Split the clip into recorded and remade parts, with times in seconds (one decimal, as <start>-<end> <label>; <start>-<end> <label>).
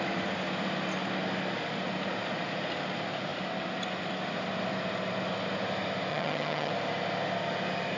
0.0-6.1 recorded; 6.1-6.7 remade; 6.7-8.0 recorded